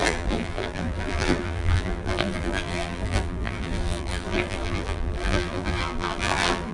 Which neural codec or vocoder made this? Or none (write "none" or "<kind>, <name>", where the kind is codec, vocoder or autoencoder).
vocoder, BigVGAN v2